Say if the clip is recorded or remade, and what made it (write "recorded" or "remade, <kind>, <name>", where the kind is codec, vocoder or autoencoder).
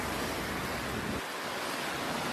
recorded